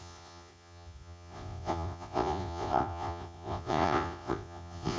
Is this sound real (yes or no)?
no